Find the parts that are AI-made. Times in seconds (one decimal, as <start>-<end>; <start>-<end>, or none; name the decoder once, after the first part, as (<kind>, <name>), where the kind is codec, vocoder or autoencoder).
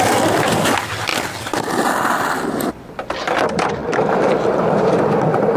1.1-2.7 (vocoder, BigVGAN v2); 3.8-5.6